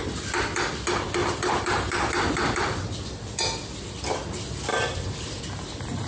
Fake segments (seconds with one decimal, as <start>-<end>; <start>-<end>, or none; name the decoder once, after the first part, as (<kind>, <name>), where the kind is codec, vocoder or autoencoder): 1.2-2.6 (vocoder, BigVGAN v2); 4.7-5.4